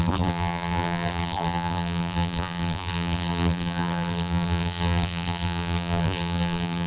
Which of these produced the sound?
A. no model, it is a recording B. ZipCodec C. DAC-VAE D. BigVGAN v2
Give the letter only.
D